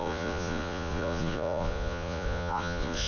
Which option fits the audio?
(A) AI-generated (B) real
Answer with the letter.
A